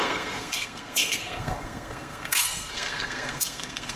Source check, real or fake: fake